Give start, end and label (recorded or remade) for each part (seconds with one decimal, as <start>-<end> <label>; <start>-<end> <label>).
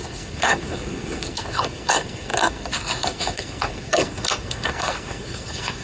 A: 0.0-5.8 remade